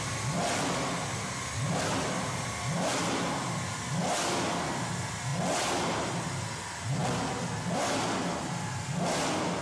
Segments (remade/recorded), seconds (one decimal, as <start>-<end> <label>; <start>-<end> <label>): 0.0-9.6 recorded